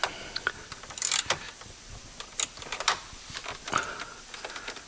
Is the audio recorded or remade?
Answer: recorded